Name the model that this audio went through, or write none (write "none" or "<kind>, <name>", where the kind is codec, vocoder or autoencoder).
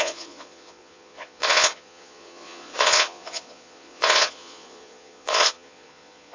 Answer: vocoder, Vocos